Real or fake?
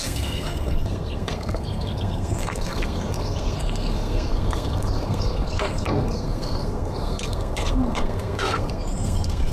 fake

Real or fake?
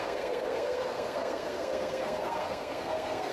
fake